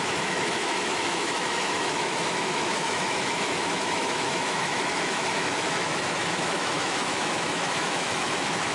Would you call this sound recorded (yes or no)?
no